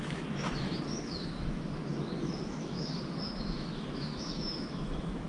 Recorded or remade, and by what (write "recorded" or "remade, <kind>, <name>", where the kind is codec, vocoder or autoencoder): remade, autoencoder, DAC-VAE